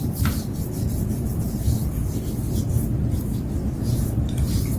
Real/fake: real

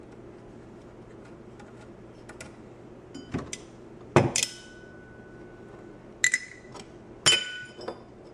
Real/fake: real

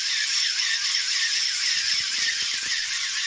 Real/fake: real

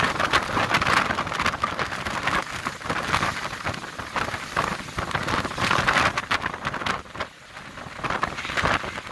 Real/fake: real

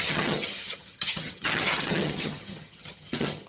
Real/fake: fake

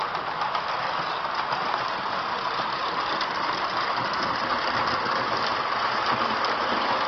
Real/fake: fake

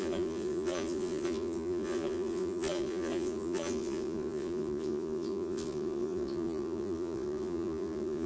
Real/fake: fake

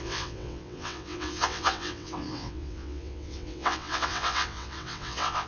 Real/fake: fake